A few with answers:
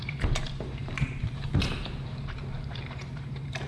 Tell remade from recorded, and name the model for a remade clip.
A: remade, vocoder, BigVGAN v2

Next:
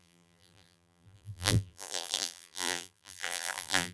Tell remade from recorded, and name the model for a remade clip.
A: remade, vocoder, BigVGAN v2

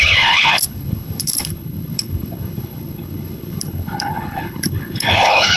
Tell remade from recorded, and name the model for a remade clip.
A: remade, codec, HILCodec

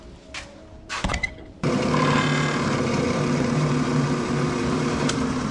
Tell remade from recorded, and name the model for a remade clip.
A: remade, vocoder, BigVGAN v2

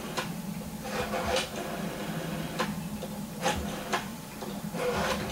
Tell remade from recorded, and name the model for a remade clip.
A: remade, vocoder, BigVGAN v2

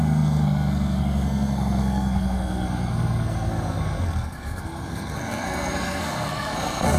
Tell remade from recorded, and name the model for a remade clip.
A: remade, codec, SNAC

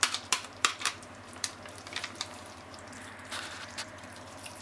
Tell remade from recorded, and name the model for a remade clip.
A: remade, vocoder, BigVGAN v2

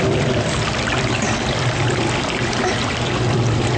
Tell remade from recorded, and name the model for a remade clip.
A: remade, vocoder, BigVGAN v2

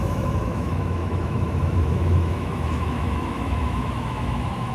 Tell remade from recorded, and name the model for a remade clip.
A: remade, autoencoder, DAC-VAE